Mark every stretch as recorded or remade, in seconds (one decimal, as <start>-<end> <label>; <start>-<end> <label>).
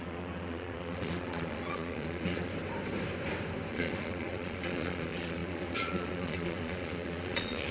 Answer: 0.0-2.5 remade; 2.5-3.7 recorded; 3.7-7.7 remade